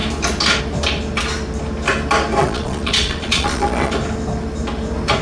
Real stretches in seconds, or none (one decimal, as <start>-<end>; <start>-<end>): 0.0-2.4; 3.9-5.2